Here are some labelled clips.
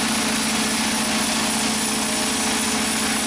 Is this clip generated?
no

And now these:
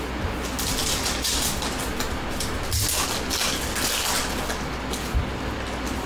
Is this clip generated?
no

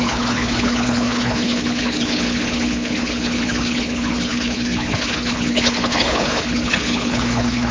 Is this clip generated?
yes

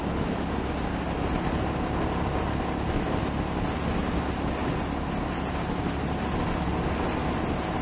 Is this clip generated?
no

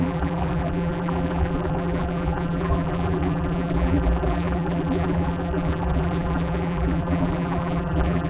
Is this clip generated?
yes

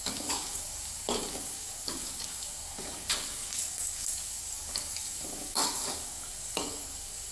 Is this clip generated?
yes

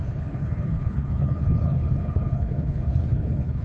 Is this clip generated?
yes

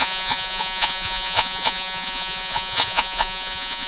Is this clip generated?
yes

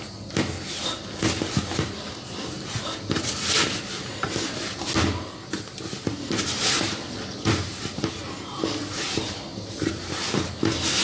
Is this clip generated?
no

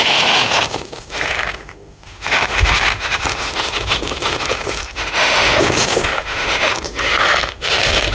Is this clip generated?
yes